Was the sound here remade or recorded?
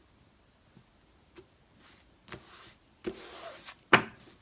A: recorded